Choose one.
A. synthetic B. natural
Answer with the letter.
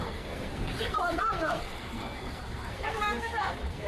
A